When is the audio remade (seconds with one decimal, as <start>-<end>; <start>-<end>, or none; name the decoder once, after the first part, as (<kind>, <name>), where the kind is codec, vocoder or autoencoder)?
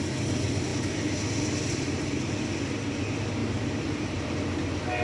3.4-4.3 (vocoder, BigVGAN v2)